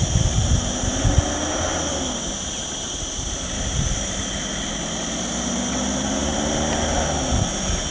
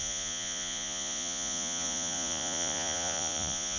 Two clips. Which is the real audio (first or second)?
first